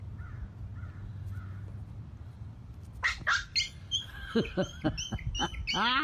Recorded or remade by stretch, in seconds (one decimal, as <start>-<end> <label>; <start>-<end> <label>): 0.0-6.0 recorded